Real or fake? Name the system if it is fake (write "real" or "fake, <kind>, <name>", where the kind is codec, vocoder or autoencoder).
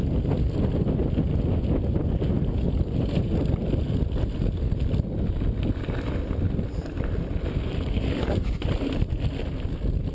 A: real